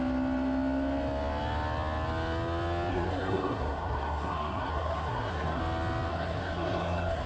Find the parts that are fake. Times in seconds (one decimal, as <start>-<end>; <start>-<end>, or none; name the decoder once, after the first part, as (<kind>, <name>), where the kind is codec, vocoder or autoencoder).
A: 2.9-5.6 (codec, SNAC); 6.1-7.3